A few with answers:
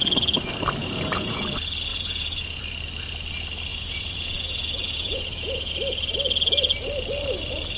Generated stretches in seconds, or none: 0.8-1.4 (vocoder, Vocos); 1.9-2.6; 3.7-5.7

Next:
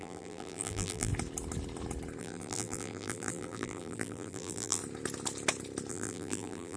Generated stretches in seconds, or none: 0.0-1.1 (vocoder, BigVGAN v2); 2.2-4.8; 5.9-6.8

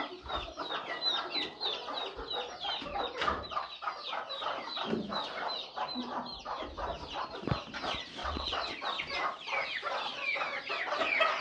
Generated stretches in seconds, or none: 8.2-8.7 (vocoder, WaveNeXt)

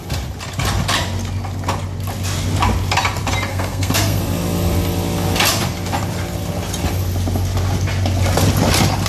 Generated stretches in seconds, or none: 3.5-4.2 (codec, SNAC)